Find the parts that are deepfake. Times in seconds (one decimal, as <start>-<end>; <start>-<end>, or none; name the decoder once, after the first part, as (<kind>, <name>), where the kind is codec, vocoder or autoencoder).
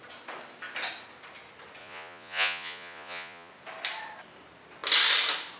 1.8-3.5 (vocoder, Vocos)